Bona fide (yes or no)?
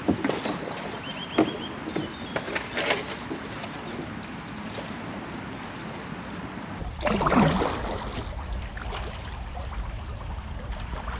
yes